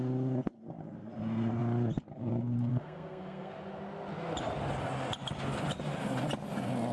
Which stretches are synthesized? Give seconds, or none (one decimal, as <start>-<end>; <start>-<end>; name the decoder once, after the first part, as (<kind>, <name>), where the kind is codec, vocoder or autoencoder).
2.7-3.5 (codec, SNAC)